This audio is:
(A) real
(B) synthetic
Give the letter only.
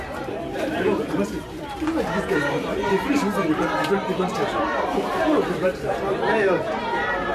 B